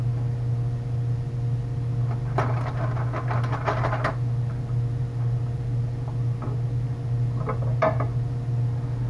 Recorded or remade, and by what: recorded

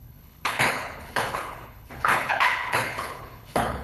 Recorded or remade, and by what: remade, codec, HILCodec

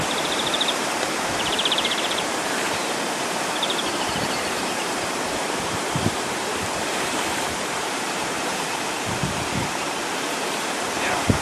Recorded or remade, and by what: remade, vocoder, BigVGAN v2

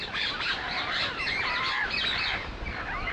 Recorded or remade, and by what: remade, vocoder, BigVGAN v2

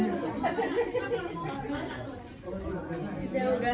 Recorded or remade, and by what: recorded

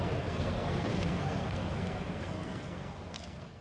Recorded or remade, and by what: remade, codec, SNAC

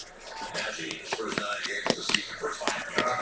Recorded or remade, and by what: recorded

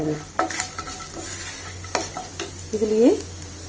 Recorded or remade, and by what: recorded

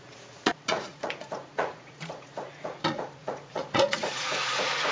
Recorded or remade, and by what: remade, vocoder, Vocos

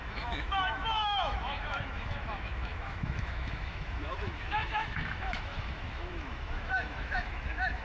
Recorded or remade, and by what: remade, autoencoder, DAC-VAE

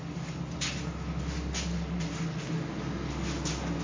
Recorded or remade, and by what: recorded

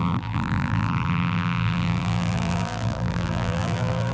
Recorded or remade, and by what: remade, vocoder, BigVGAN v2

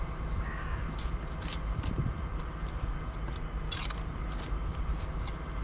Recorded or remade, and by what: recorded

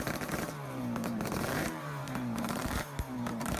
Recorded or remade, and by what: remade, vocoder, BigVGAN v2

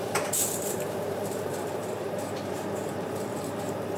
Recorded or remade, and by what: remade, vocoder, BigVGAN v2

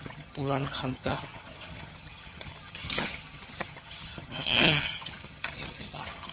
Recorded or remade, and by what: remade, vocoder, HiFi-GAN